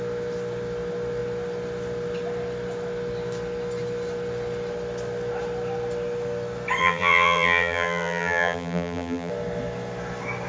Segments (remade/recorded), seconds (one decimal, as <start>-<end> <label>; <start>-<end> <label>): 0.0-6.8 recorded; 6.8-9.3 remade; 9.3-10.5 recorded